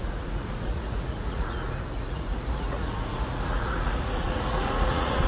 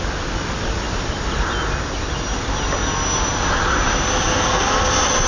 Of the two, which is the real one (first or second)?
second